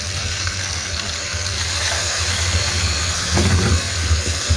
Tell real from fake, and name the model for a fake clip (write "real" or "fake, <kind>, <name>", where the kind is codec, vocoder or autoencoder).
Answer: fake, codec, SNAC